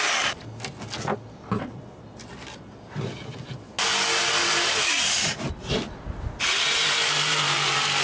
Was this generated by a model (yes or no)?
no